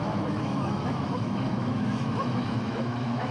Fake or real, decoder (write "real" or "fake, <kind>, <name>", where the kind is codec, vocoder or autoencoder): fake, autoencoder, DAC-VAE